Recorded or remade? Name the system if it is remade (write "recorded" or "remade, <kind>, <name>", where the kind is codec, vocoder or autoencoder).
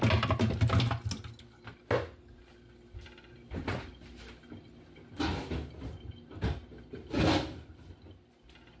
recorded